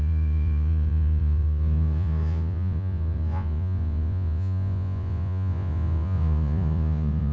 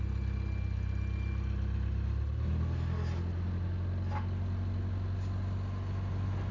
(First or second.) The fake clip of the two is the first